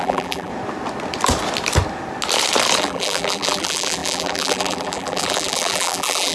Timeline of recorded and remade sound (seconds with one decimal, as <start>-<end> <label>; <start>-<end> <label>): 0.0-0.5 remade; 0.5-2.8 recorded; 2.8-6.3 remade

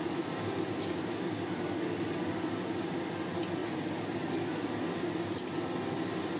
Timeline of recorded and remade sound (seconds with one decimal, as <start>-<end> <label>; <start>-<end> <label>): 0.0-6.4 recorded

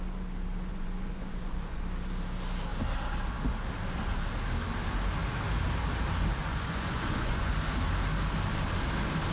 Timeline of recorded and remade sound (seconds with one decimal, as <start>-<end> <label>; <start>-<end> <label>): 0.0-0.7 recorded; 0.7-1.8 remade; 1.8-6.5 recorded; 6.5-7.5 remade; 7.5-9.3 recorded